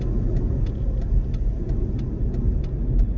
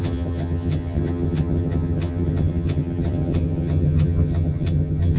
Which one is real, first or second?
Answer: first